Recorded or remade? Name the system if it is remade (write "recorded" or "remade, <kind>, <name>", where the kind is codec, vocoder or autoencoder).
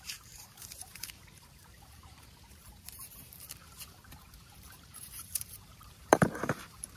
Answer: remade, vocoder, BigVGAN v2